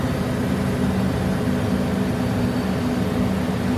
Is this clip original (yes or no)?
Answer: yes